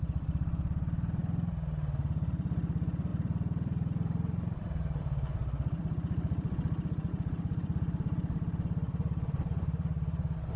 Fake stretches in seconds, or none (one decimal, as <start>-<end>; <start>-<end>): 0.0-1.2; 2.3-10.6